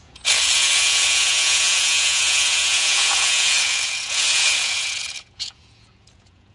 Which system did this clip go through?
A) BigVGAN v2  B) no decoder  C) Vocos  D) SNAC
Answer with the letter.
C